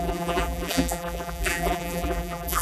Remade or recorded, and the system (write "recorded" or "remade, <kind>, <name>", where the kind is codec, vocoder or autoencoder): remade, vocoder, BigVGAN v2